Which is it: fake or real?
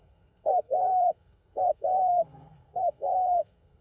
fake